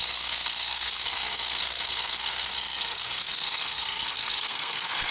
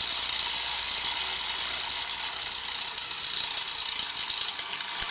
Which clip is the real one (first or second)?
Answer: second